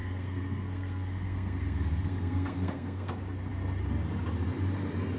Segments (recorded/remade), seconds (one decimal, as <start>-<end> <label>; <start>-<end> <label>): 0.0-3.1 remade; 3.1-5.2 recorded